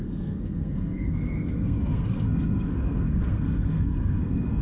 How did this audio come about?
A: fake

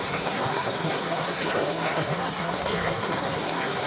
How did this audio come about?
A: fake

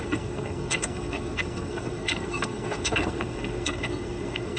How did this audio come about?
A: fake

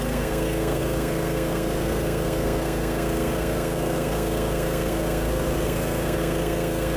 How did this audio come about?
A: fake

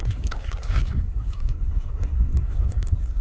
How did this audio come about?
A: fake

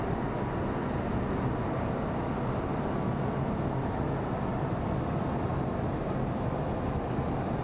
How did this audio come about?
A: real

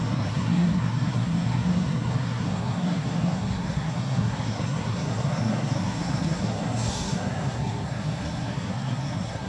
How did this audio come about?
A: fake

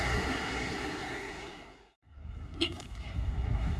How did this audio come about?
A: fake